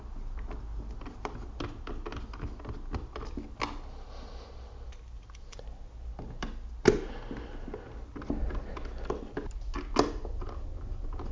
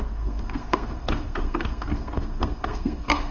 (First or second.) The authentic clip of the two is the first